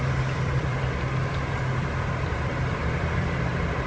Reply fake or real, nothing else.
fake